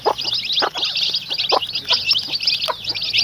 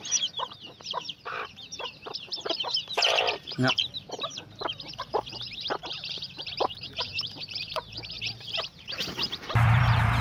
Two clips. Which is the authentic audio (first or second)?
first